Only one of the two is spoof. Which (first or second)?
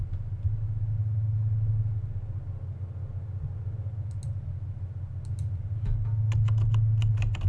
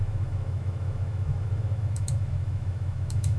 second